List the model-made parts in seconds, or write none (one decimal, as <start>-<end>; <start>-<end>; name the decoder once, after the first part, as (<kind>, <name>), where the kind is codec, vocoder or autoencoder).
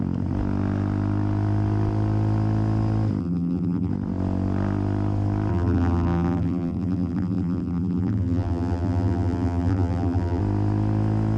3.2-3.9 (vocoder, BigVGAN v2); 5.5-10.4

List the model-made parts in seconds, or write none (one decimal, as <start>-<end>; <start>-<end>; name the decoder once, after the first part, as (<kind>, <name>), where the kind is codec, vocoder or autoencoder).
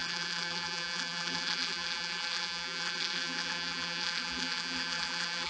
0.0-5.5 (vocoder, BigVGAN v2)